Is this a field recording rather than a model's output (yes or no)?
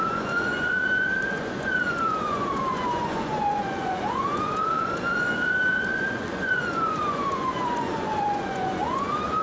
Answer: no